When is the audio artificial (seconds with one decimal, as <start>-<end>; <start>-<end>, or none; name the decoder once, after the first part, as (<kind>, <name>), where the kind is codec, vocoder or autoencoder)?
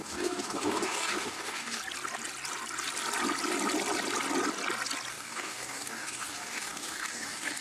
0.0-1.8 (codec, DAC); 5.1-7.6